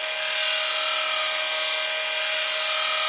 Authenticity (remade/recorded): recorded